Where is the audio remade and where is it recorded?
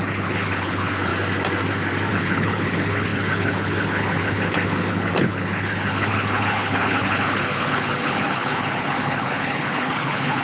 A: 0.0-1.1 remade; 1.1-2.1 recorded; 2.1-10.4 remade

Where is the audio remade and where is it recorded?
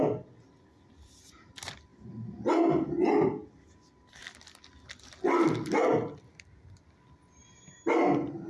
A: 0.0-8.5 recorded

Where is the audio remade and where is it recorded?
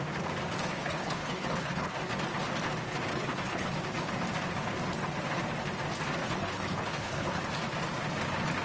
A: 0.0-0.7 recorded; 0.7-1.9 remade; 1.9-3.1 recorded; 3.1-3.7 remade; 3.7-6.2 recorded; 6.2-7.4 remade; 7.4-8.6 recorded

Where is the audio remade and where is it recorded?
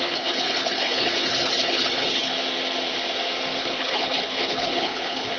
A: 0.0-2.3 remade; 2.3-3.6 recorded; 3.6-5.4 remade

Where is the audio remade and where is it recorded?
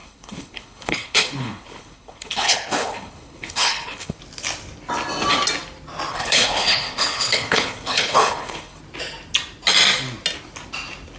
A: 0.0-4.2 remade; 4.2-6.1 recorded; 6.1-8.8 remade; 8.8-11.2 recorded